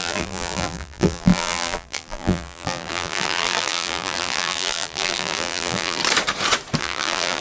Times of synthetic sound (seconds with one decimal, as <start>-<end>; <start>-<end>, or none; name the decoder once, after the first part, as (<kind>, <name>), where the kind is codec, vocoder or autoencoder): 0.0-6.0 (vocoder, BigVGAN v2); 6.8-7.4